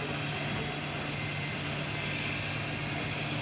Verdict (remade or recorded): recorded